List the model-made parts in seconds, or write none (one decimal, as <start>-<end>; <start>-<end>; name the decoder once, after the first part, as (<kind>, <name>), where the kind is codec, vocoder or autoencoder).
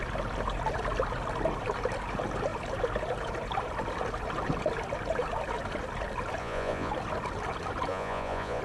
6.4-6.9 (vocoder, Vocos); 7.9-8.6